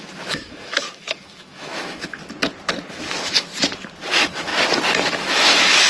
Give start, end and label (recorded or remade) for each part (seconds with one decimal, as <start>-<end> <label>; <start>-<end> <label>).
0.0-2.2 remade; 2.2-2.9 recorded; 2.9-3.5 remade; 3.5-4.1 recorded; 4.1-4.5 remade; 4.5-5.1 recorded; 5.1-5.9 remade